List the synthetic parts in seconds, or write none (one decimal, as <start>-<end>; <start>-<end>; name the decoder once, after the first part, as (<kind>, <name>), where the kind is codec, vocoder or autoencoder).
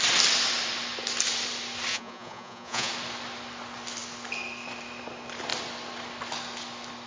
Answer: 1.9-2.9 (vocoder, Vocos)